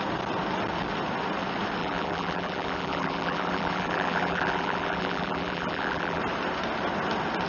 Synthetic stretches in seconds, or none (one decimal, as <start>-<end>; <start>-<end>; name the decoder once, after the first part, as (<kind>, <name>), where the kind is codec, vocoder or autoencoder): 1.8-6.2 (vocoder, BigVGAN v2)